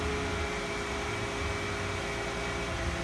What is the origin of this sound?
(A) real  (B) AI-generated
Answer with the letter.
A